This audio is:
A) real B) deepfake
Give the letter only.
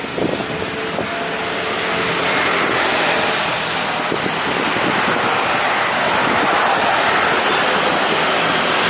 A